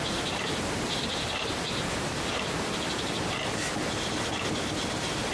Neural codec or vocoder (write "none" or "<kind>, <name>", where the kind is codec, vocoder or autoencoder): none